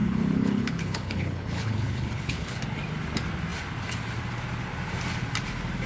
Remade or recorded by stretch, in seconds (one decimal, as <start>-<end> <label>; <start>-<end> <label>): 0.0-2.6 remade; 2.6-5.9 recorded